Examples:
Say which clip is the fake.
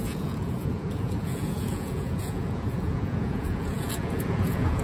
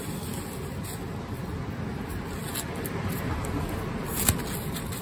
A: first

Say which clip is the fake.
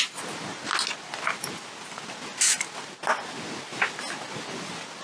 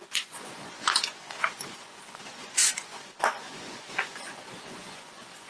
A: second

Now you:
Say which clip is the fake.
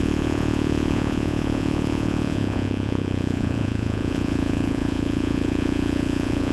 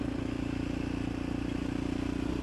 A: first